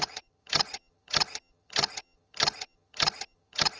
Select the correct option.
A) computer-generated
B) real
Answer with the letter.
A